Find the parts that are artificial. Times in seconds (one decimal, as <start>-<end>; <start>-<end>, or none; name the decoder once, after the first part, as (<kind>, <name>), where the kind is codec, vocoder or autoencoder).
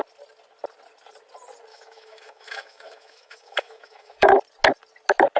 1.7-4.3 (autoencoder, DAC-VAE)